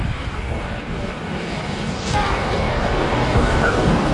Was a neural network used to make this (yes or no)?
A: yes